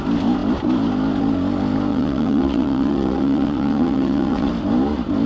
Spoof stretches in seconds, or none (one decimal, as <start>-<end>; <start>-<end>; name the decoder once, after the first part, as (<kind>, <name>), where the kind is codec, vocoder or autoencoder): 1.9-4.5 (vocoder, WaveNeXt)